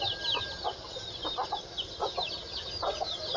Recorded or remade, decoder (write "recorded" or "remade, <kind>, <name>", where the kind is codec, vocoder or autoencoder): recorded